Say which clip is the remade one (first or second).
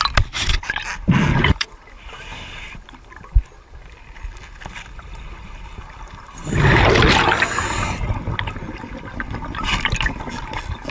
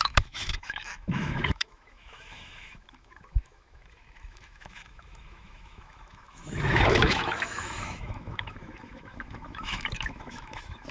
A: second